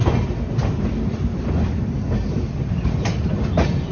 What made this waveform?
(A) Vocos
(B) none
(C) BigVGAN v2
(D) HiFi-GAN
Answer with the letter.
B